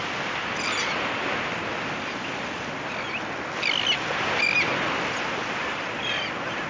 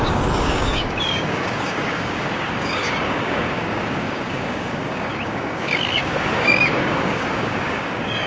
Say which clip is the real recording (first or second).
first